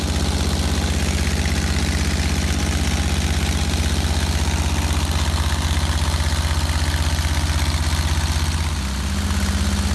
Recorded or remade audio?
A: recorded